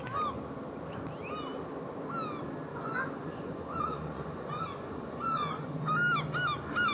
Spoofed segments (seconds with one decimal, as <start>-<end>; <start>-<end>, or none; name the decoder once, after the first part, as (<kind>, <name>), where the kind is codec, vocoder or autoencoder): 2.7-5.8 (vocoder, Vocos)